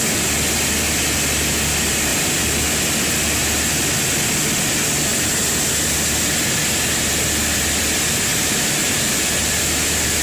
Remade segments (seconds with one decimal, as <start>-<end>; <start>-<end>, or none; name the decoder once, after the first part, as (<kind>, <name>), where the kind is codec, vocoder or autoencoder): 8.3-9.5 (vocoder, BigVGAN v2)